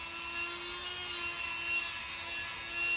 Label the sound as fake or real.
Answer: real